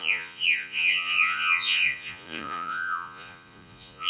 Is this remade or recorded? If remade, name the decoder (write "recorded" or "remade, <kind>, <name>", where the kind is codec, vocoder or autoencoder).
remade, vocoder, Vocos